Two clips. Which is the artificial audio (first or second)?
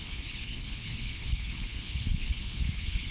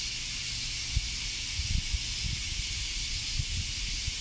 first